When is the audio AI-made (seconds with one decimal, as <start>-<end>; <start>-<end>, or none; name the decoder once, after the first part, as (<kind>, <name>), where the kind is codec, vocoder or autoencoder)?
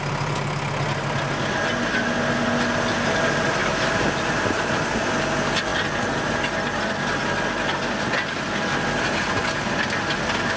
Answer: 3.6-5.0 (vocoder, BigVGAN v2)